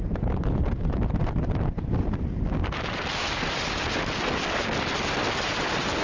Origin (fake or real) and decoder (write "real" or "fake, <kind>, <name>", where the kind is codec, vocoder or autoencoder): real